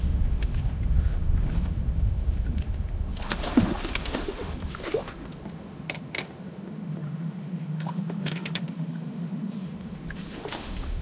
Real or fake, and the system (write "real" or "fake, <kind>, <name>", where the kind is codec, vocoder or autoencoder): fake, autoencoder, DAC-VAE